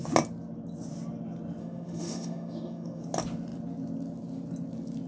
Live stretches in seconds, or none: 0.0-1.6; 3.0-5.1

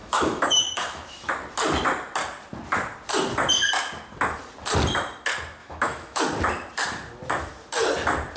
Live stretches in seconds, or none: 1.3-5.6; 6.2-8.4

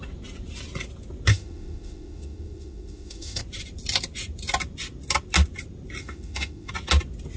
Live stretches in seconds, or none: 0.0-1.3; 3.4-6.0; 6.7-7.4

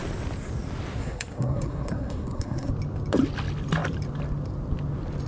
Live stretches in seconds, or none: 0.0-1.0; 2.7-5.3

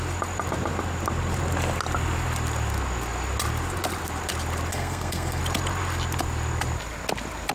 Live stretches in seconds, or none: 0.0-4.7; 5.4-7.5

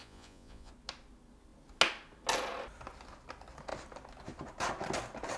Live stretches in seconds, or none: 0.7-5.4